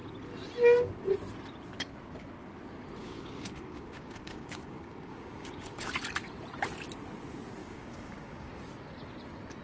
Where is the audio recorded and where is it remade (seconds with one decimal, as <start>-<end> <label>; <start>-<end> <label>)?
0.0-3.0 recorded; 3.0-5.9 remade; 5.9-7.6 recorded; 7.6-8.6 remade; 8.6-9.6 recorded